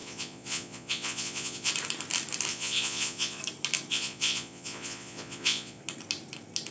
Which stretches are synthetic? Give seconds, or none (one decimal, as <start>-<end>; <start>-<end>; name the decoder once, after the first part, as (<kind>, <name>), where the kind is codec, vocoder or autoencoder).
0.0-1.7 (vocoder, Vocos); 2.5-3.4; 3.9-5.8